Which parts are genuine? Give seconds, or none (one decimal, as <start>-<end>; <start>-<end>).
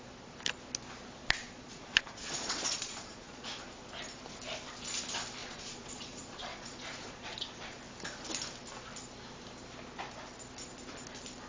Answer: 0.0-1.4; 3.5-5.4; 7.8-11.5